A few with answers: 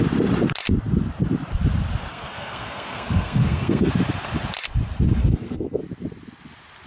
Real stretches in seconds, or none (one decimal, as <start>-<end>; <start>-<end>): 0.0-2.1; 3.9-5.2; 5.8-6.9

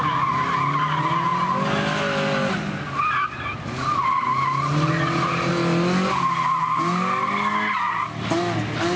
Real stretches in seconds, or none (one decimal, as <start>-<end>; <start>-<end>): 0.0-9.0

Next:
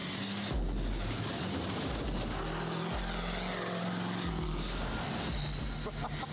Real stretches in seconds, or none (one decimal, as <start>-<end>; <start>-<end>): 0.0-6.3

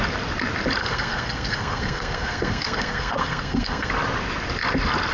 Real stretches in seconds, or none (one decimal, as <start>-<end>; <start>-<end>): 0.0-0.8; 3.9-5.1

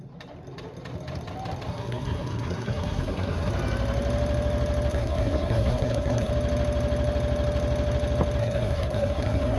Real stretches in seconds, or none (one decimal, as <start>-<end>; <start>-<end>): 0.0-1.7; 3.5-4.9; 6.3-8.4